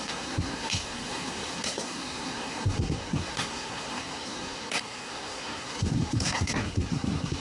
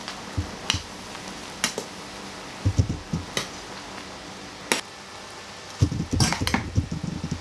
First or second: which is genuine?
second